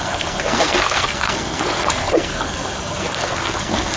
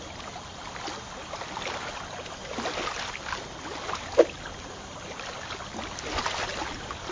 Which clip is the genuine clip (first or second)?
second